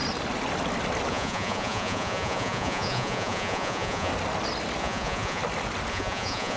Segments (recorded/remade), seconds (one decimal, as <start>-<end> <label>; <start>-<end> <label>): 0.0-1.1 recorded; 1.1-4.1 remade; 4.1-4.8 recorded; 4.8-5.4 remade; 5.4-5.9 recorded; 5.9-6.6 remade